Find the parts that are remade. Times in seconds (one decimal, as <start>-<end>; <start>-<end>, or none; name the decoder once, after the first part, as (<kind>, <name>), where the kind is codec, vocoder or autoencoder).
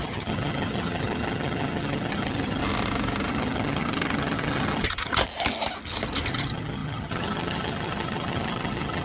0.0-2.6 (vocoder, HiFi-GAN); 3.3-5.1; 6.3-9.0